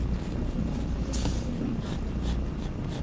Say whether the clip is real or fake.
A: real